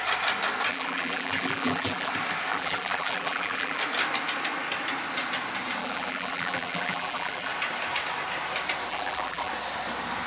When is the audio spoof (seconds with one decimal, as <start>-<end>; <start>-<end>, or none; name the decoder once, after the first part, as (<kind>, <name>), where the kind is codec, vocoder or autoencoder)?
0.7-2.1 (vocoder, BigVGAN v2); 2.5-3.8; 5.8-7.5; 8.9-9.5